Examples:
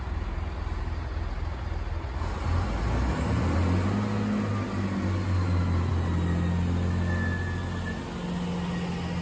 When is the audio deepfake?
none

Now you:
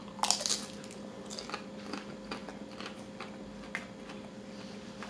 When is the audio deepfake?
none

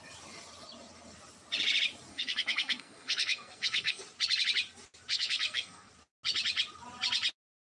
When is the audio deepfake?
2.1-4.0 (codec, SNAC); 5.1-5.9

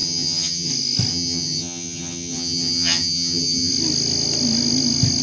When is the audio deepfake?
0.0-0.7 (vocoder, HiFi-GAN); 1.1-3.7

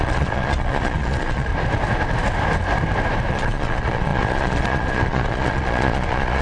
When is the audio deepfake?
0.0-1.5 (vocoder, Vocos); 3.3-6.4